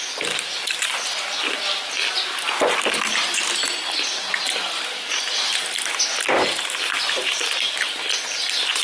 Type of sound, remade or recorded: recorded